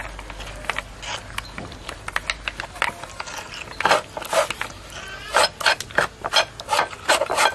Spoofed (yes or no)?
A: no